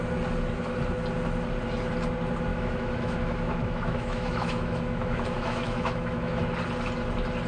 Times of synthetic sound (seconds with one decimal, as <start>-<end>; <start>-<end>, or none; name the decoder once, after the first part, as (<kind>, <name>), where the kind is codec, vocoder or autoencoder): 2.5-6.4 (autoencoder, DAC-VAE)